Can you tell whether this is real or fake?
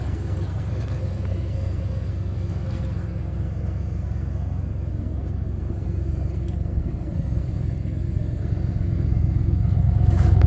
fake